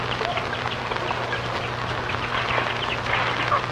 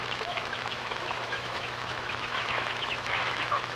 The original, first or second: first